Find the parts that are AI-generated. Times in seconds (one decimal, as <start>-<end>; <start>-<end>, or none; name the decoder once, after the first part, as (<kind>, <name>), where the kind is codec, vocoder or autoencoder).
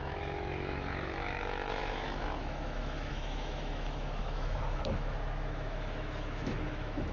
0.0-7.1 (autoencoder, DAC-VAE)